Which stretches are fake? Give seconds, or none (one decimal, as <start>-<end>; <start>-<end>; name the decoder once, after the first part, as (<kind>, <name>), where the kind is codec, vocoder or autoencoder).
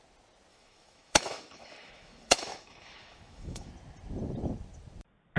0.5-3.7 (autoencoder, DAC-VAE)